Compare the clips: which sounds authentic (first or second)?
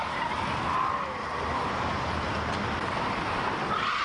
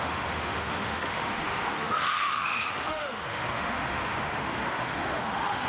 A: first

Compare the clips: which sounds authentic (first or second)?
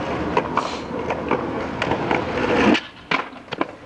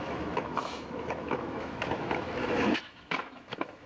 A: first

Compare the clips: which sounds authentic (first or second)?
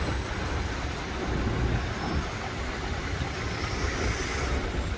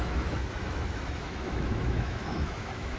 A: first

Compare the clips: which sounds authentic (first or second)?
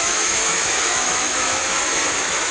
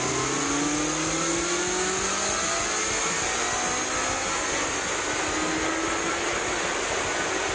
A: second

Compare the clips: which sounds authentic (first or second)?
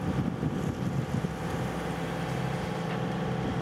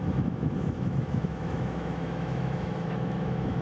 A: first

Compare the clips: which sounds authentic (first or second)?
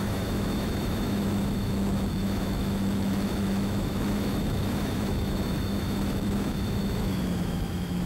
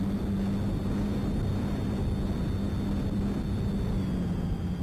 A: second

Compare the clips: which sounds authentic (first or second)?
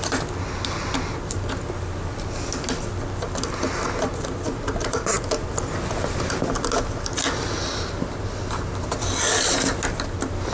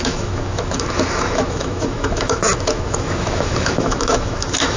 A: first